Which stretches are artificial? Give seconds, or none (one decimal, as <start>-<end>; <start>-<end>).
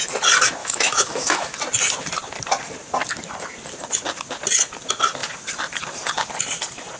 0.6-1.6